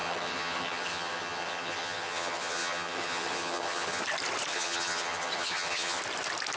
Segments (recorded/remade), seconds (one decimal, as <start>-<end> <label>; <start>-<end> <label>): 0.0-4.0 remade; 4.0-4.5 recorded; 4.5-6.0 remade; 6.0-6.6 recorded

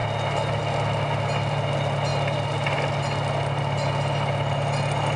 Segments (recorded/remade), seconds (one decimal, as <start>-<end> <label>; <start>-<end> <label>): 0.0-5.2 recorded

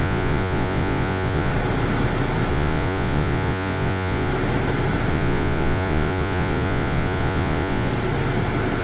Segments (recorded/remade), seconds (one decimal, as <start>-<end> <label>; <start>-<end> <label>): 0.0-1.5 remade; 1.5-2.5 recorded; 2.5-4.3 remade; 4.3-5.1 recorded; 5.1-7.9 remade; 7.9-8.8 recorded

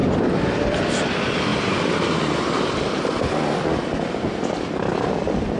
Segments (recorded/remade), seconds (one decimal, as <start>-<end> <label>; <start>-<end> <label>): 0.0-5.6 recorded

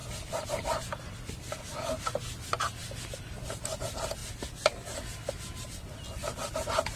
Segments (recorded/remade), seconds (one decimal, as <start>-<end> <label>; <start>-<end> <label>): 0.0-7.0 recorded

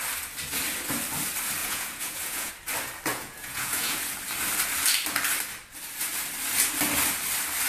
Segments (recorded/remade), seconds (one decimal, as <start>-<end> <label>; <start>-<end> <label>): 0.0-1.6 recorded; 1.6-2.5 remade; 2.5-3.1 recorded; 3.1-4.0 remade; 4.0-7.7 recorded

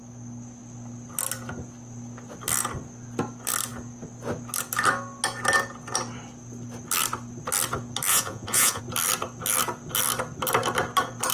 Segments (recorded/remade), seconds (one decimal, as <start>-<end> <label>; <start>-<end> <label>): 0.0-8.1 recorded; 8.1-8.8 remade; 8.8-11.3 recorded

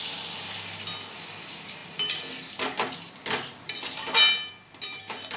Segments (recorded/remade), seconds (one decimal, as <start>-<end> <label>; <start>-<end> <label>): 0.0-5.4 recorded